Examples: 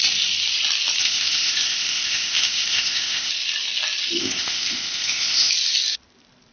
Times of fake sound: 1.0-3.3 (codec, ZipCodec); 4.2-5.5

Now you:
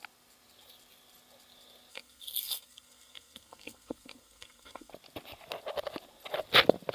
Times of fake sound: 1.9-4.9 (codec, SNAC)

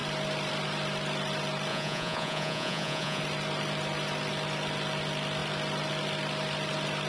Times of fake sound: 1.7-3.2 (vocoder, Vocos)

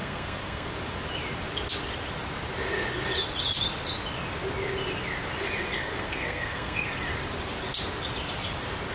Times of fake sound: 0.0-0.7 (codec, SNAC); 5.8-6.9